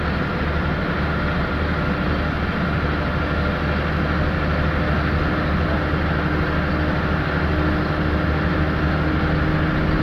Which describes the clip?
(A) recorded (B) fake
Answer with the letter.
A